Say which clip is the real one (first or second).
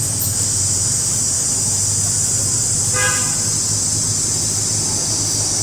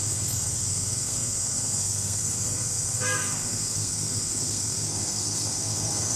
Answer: first